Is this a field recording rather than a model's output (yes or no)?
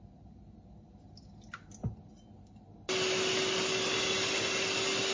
yes